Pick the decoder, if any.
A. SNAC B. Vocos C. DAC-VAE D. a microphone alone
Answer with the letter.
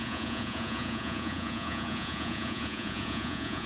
B